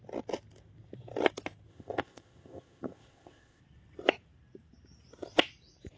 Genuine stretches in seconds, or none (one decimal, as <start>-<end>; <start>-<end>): 0.0-1.7; 3.6-6.0